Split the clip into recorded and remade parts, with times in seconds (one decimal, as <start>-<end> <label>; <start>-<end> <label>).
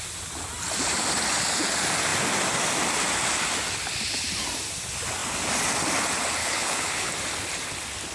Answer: 0.0-6.4 recorded; 6.4-7.1 remade; 7.1-8.1 recorded